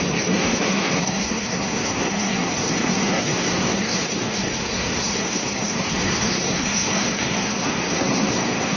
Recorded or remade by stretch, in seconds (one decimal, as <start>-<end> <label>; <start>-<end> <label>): 0.0-8.8 remade